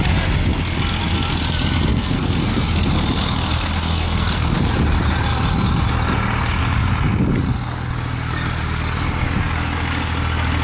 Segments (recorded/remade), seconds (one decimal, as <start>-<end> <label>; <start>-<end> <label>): 0.0-1.9 recorded; 1.9-4.7 remade; 4.7-10.6 recorded